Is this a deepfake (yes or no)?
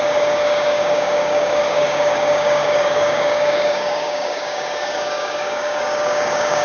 yes